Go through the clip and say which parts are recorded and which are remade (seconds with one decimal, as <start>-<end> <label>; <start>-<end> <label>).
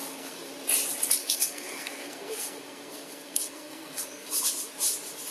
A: 0.0-0.5 remade; 0.5-1.2 recorded; 1.2-4.4 remade; 4.4-5.3 recorded